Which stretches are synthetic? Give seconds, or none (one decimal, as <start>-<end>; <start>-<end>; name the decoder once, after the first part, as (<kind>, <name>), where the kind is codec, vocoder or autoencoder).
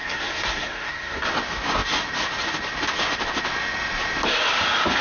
0.0-1.3 (codec, SNAC)